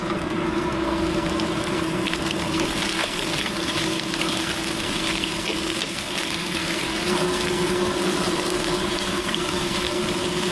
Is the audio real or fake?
fake